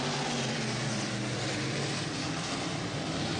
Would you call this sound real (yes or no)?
yes